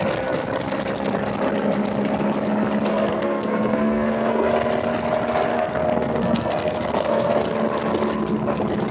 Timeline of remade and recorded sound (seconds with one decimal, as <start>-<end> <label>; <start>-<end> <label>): 0.0-2.9 recorded; 2.9-4.5 remade; 4.5-5.5 recorded; 5.5-7.3 remade; 7.3-8.9 recorded